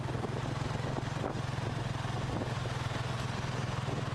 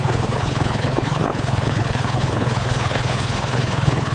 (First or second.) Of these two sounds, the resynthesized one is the second